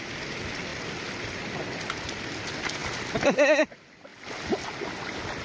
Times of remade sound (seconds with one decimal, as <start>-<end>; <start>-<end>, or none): none